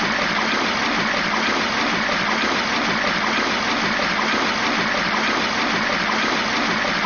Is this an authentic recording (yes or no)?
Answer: yes